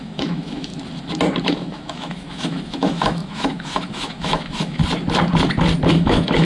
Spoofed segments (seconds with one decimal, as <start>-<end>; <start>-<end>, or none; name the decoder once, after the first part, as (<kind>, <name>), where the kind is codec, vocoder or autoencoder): 0.0-0.7 (autoencoder, DAC-VAE); 1.5-4.8; 5.9-6.4